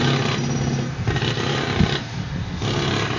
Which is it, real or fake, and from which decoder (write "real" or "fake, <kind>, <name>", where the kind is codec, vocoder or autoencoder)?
real